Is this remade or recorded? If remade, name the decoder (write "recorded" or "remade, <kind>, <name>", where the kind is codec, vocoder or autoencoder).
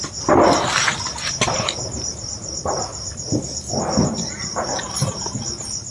recorded